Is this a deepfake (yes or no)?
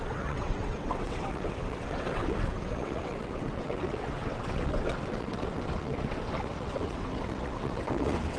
yes